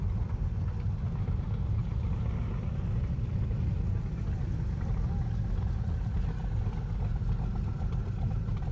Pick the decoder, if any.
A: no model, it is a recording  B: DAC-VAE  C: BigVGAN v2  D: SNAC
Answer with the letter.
A